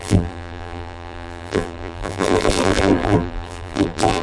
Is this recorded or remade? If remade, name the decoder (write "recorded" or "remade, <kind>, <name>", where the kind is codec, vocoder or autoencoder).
remade, vocoder, BigVGAN v2